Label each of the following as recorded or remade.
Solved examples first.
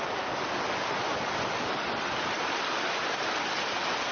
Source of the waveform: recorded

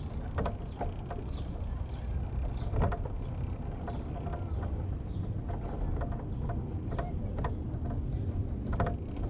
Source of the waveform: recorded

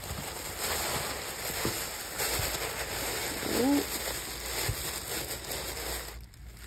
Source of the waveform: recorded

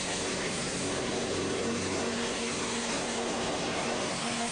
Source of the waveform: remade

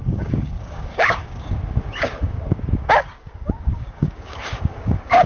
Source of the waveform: remade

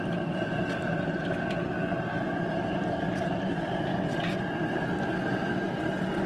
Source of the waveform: recorded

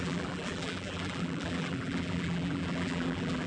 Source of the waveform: remade